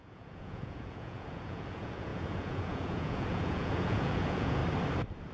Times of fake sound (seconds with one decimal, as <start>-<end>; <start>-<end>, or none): 0.0-4.6